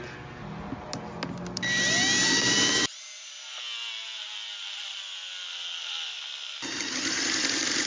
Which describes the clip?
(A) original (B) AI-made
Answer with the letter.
A